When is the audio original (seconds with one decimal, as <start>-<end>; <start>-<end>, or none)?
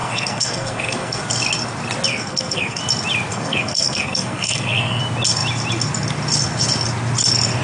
1.2-2.1; 2.8-3.3; 5.0-7.6